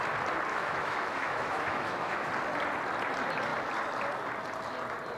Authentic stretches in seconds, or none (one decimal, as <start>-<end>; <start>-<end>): 0.0-0.5; 2.3-5.2